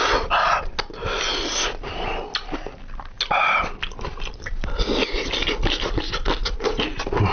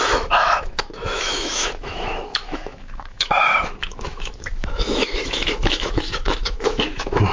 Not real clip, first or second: second